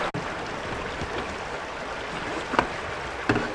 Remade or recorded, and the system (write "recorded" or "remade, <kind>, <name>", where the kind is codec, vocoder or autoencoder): recorded